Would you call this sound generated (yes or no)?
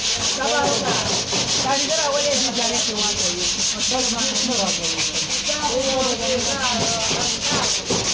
no